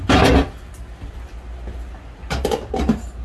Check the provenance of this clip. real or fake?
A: real